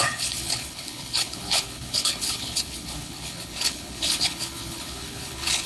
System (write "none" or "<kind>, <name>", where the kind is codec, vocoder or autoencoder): codec, HILCodec